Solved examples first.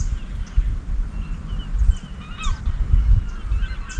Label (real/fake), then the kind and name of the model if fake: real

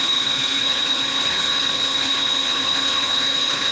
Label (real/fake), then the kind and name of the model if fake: fake, codec, HILCodec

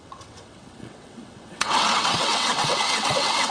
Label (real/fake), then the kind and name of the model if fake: fake, vocoder, WaveNeXt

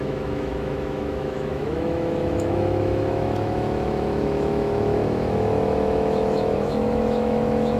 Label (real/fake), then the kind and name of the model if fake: fake, autoencoder, DAC-VAE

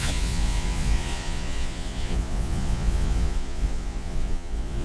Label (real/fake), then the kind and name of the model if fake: fake, vocoder, Vocos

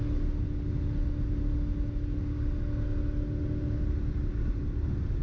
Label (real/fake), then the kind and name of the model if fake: real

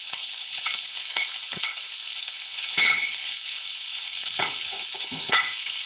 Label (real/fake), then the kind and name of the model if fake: fake, codec, HILCodec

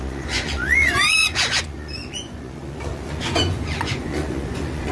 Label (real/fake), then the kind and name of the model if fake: fake, vocoder, Vocos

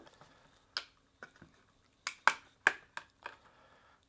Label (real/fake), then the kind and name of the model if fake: real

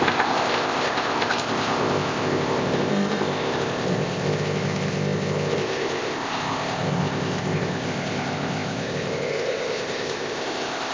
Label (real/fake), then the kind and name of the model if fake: fake, codec, ZipCodec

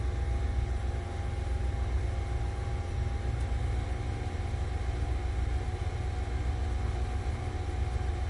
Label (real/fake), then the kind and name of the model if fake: real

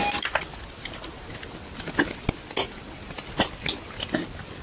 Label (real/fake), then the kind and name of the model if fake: real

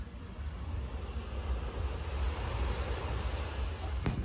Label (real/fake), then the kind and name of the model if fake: real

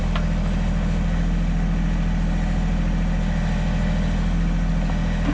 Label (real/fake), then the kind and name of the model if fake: real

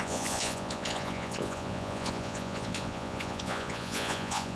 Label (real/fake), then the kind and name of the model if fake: fake, vocoder, Vocos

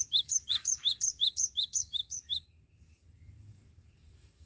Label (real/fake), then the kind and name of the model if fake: fake, codec, DAC